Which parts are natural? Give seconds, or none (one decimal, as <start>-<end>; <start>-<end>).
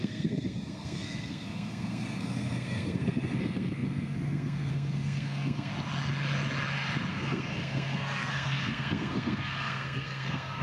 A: 5.7-7.1